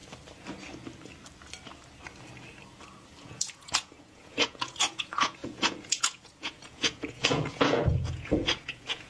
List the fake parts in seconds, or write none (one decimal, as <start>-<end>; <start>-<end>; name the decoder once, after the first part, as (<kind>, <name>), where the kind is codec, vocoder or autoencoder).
3.2-9.1 (vocoder, Vocos)